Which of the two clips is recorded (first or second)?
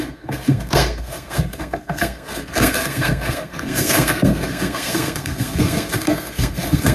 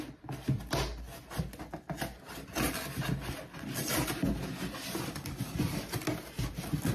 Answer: second